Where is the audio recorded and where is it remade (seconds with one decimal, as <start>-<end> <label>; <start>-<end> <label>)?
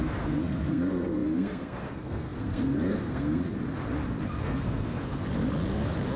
0.0-3.4 remade; 3.4-4.4 recorded; 4.4-5.2 remade; 5.2-6.2 recorded